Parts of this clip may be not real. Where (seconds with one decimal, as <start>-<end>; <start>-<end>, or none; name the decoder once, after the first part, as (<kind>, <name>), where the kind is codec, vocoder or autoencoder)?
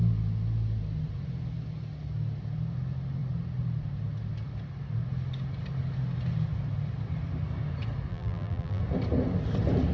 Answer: 8.1-8.8 (vocoder, BigVGAN v2)